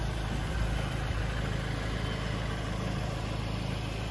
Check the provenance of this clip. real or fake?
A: real